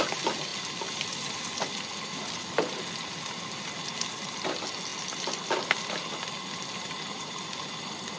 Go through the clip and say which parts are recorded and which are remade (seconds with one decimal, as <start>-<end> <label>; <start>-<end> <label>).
0.0-8.2 recorded